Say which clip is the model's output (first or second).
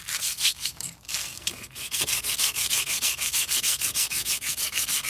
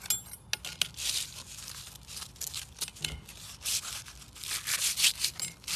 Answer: first